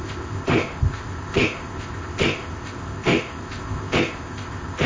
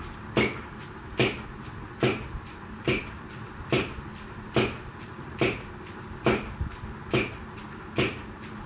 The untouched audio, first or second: second